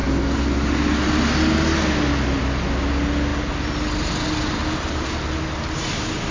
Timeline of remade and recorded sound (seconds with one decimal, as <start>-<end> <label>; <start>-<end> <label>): 0.0-6.3 recorded